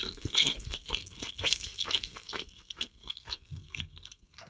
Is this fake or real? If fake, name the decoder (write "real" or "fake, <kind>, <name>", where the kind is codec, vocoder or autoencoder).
fake, codec, SNAC